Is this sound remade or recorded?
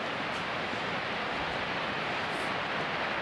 recorded